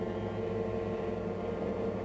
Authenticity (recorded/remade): remade